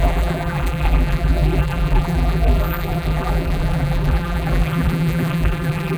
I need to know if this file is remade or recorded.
remade